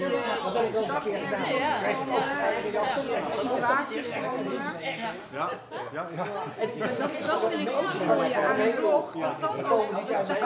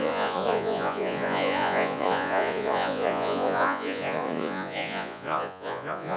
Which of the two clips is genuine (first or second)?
first